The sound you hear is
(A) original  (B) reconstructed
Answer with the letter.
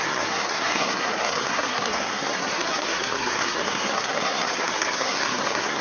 B